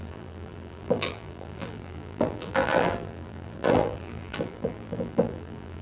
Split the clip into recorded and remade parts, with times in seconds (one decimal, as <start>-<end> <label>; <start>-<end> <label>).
0.0-5.8 remade

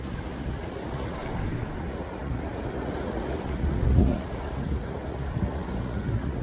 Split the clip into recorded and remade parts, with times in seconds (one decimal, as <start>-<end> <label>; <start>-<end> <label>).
0.0-1.2 remade; 1.2-1.8 recorded; 1.8-6.4 remade

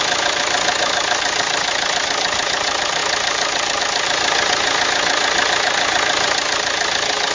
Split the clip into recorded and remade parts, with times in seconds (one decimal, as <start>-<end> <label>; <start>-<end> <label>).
0.0-3.0 recorded; 3.0-3.8 remade; 3.8-7.3 recorded

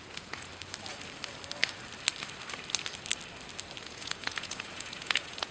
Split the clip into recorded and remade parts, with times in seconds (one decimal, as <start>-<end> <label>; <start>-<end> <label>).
0.0-0.5 remade; 0.5-3.8 recorded; 3.8-5.5 remade